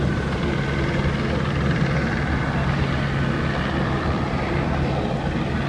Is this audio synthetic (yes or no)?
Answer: no